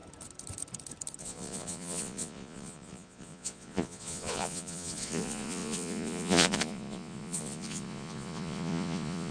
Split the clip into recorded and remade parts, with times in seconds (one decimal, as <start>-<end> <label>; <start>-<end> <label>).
0.0-1.2 recorded; 1.2-9.3 remade